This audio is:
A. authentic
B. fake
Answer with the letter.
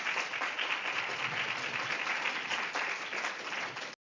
A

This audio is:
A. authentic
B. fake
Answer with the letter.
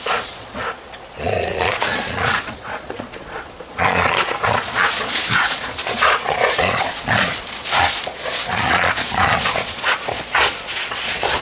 B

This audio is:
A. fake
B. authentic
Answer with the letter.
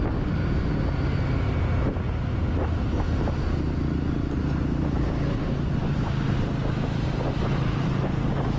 B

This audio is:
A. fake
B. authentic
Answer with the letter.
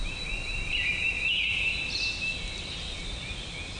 B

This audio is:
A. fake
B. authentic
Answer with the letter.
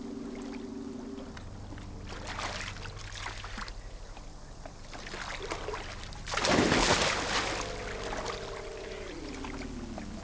B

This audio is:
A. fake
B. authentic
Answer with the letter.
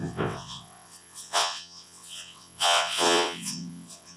A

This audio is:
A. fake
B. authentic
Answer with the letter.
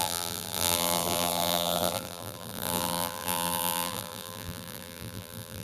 A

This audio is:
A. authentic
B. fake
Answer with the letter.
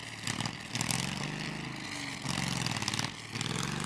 A